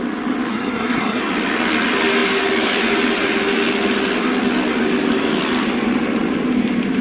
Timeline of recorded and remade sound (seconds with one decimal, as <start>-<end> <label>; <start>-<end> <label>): 0.0-0.5 recorded; 0.5-1.2 remade; 1.2-7.0 recorded